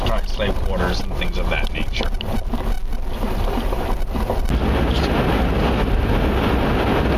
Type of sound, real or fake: real